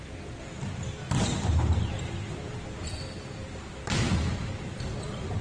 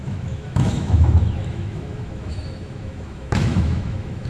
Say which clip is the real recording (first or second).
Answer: first